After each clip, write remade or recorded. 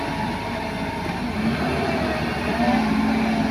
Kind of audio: recorded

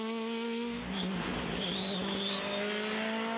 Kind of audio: recorded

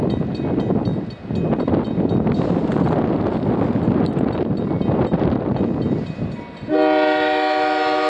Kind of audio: recorded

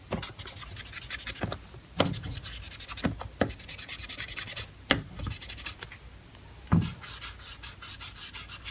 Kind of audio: recorded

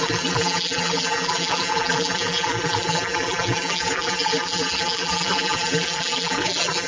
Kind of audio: remade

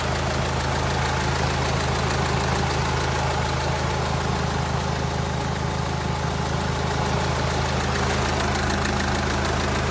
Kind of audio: recorded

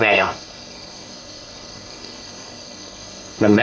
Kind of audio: remade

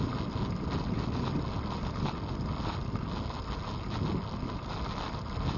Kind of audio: recorded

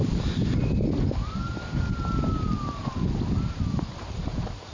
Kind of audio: recorded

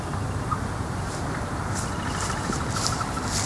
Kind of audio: recorded